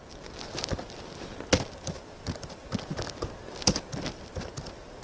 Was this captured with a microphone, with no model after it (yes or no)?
yes